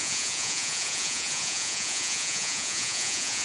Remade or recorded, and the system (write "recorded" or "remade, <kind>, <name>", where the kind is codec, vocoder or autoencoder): remade, vocoder, Vocos